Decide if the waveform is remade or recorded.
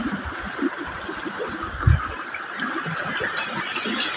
recorded